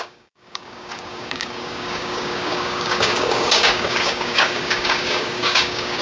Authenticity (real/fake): fake